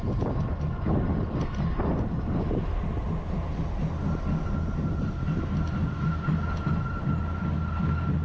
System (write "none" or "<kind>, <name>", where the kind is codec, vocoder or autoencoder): none